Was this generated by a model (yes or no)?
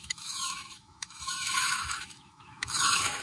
yes